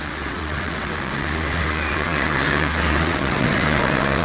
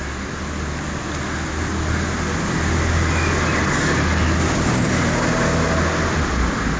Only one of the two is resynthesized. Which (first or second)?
first